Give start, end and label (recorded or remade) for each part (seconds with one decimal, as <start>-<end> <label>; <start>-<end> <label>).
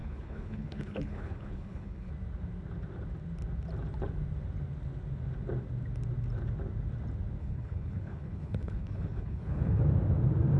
0.0-2.1 remade; 2.1-7.4 recorded; 7.4-9.8 remade; 9.8-10.6 recorded